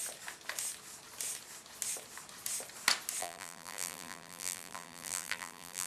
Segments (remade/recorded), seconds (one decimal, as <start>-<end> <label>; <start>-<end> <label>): 0.0-3.2 recorded; 3.2-5.9 remade